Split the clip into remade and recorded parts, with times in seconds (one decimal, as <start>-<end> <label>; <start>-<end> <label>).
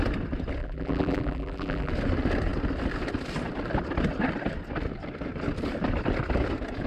0.0-0.6 recorded; 0.6-1.9 remade; 1.9-6.9 recorded